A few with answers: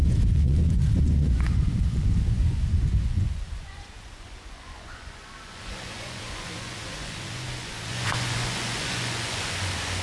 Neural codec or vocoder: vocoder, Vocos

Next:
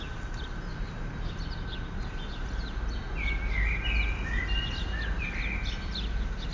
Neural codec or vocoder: none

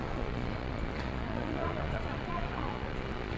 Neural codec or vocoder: vocoder, Vocos